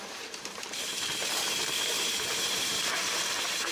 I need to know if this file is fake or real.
fake